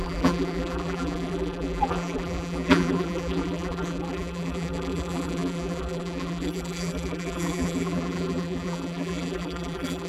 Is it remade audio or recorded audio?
remade